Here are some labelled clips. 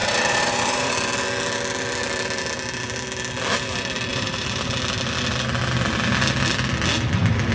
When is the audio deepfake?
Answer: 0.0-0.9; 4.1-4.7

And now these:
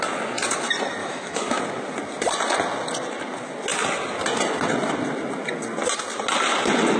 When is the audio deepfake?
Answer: 1.0-1.6